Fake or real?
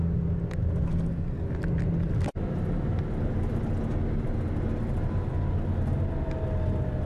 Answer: real